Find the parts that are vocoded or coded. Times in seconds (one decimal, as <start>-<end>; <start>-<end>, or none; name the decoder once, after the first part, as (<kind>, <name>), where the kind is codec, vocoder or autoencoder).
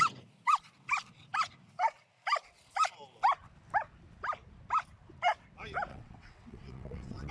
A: 5.9-7.3 (vocoder, WaveNeXt)